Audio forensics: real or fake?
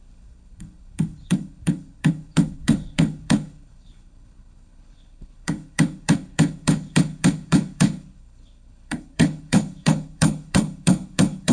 fake